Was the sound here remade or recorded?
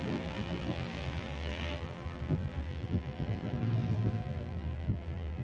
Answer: remade